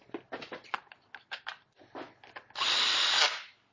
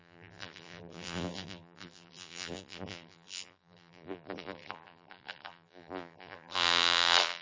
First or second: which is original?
first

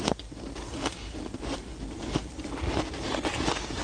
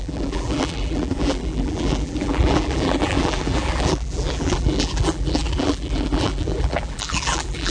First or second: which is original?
first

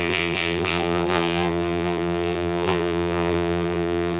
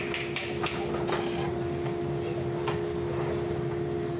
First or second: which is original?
second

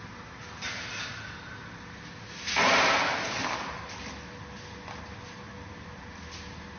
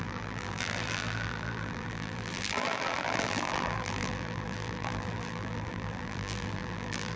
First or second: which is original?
first